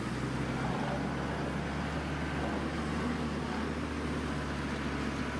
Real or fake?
real